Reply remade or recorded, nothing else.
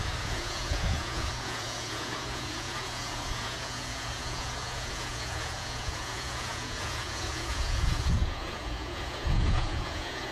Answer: remade